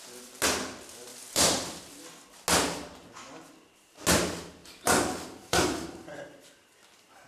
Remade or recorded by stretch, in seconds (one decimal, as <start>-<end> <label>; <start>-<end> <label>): 0.0-1.1 recorded; 1.1-2.0 remade; 2.0-4.6 recorded; 4.6-6.5 remade; 6.5-7.3 recorded